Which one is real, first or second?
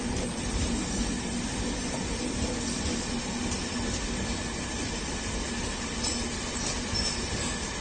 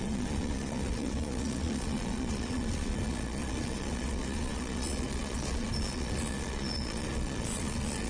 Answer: first